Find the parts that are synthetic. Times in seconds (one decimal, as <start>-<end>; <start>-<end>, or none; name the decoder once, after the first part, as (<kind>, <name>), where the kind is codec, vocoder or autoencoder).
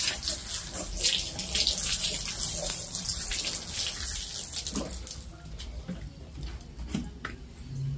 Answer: none